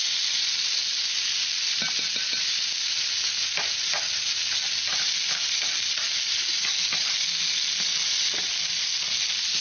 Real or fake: real